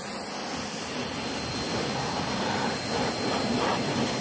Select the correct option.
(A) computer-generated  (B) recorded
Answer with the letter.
B